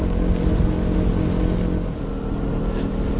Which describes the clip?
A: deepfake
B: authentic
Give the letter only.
B